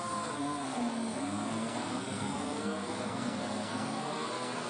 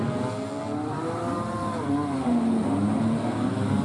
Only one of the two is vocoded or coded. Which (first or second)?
first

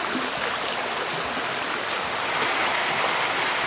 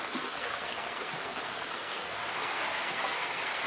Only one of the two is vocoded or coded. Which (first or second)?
second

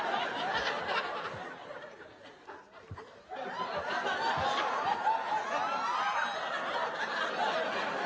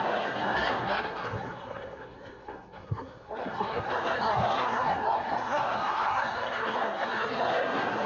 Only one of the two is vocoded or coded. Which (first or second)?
second